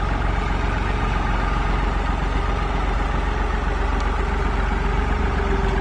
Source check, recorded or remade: recorded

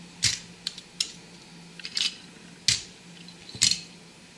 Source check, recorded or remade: recorded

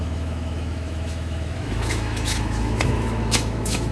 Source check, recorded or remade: remade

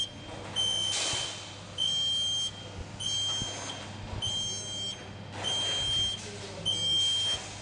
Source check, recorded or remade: recorded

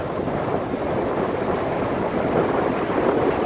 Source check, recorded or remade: recorded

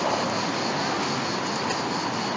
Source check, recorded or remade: recorded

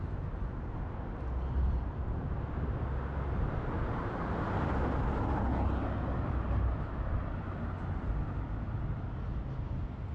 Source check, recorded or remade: recorded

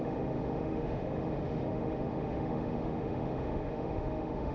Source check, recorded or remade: remade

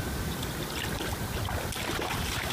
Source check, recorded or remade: recorded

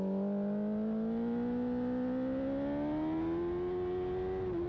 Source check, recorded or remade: recorded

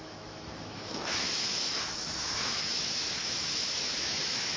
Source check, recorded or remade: remade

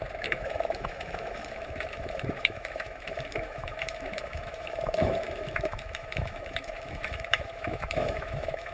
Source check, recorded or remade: remade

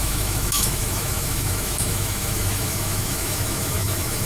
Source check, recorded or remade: remade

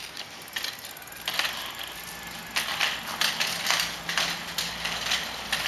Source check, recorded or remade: recorded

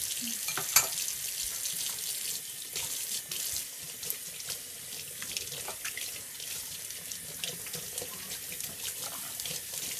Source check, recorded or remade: recorded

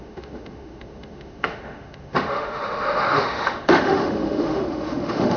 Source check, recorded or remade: remade